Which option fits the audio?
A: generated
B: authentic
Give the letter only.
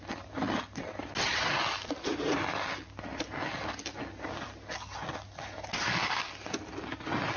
B